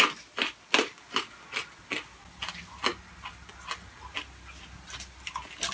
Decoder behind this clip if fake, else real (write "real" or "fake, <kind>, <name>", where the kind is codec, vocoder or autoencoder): real